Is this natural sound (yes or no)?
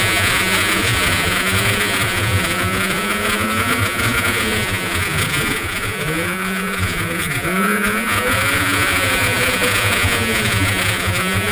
no